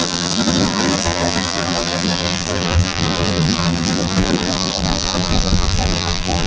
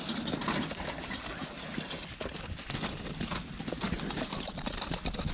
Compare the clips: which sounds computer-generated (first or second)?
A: first